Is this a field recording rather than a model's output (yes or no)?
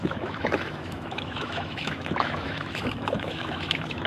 no